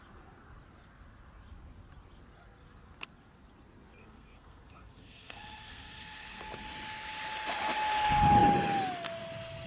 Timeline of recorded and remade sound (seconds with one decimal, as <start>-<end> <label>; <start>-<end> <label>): 0.0-4.0 recorded; 4.0-6.4 remade; 6.4-9.7 recorded